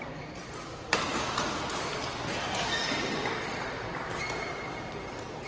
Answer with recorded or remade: recorded